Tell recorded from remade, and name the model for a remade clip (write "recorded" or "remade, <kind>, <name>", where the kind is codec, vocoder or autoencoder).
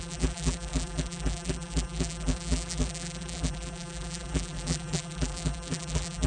remade, vocoder, BigVGAN v2